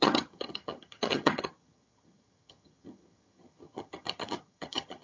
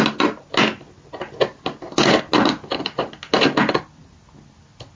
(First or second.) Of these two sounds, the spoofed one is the first